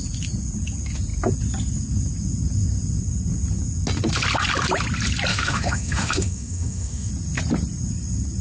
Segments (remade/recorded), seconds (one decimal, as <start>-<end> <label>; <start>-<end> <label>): 0.0-5.3 recorded; 5.3-7.1 remade; 7.1-8.4 recorded